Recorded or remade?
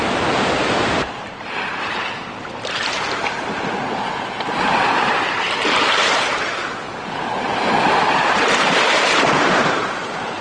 remade